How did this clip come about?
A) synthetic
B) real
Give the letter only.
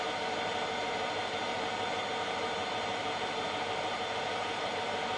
A